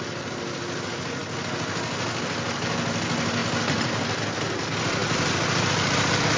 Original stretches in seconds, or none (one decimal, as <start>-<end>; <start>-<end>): 0.0-6.4